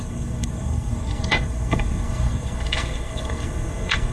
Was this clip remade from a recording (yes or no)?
yes